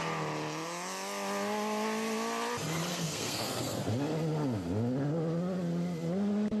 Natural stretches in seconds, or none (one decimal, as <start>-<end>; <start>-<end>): 0.0-2.9; 3.9-6.6